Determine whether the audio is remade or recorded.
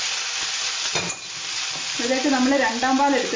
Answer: recorded